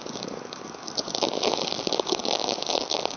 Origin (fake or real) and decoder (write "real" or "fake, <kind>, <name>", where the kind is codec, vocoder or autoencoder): fake, codec, DAC